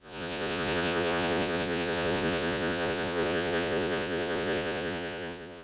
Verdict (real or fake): fake